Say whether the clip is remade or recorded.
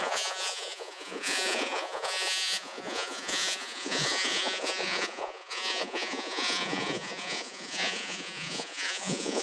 remade